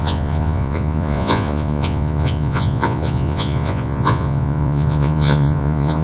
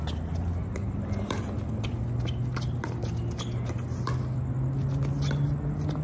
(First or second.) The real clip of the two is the second